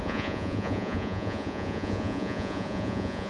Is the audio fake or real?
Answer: fake